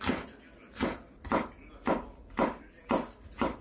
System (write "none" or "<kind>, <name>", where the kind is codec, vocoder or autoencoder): none